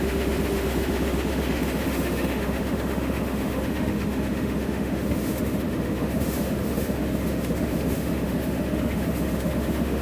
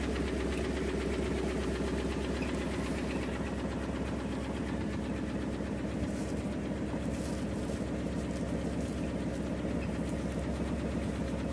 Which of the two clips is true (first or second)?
second